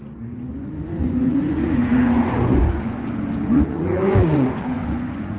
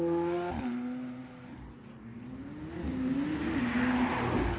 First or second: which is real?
second